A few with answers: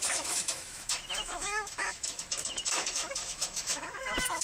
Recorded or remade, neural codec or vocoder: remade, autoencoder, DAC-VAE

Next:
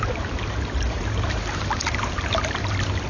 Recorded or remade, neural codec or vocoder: recorded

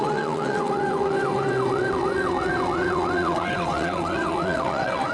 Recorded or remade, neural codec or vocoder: remade, vocoder, WaveNeXt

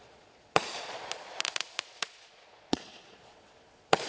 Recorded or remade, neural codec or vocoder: remade, vocoder, Vocos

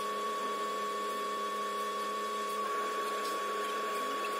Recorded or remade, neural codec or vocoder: remade, vocoder, BigVGAN v2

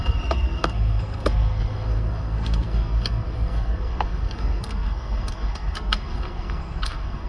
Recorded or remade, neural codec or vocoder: remade, codec, SNAC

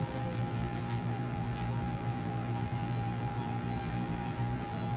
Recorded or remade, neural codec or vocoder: remade, vocoder, BigVGAN v2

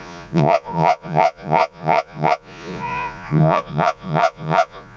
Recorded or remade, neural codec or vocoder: remade, vocoder, Vocos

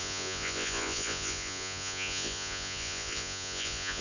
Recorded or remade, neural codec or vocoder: remade, vocoder, Vocos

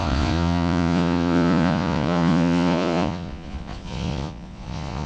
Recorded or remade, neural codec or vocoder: remade, vocoder, Vocos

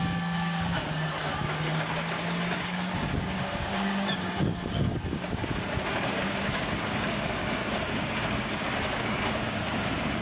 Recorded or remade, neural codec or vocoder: remade, codec, DAC